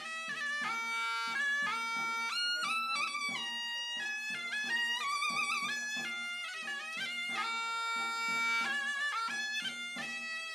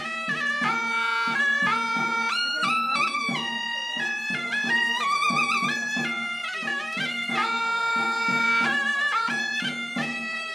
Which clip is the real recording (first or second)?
first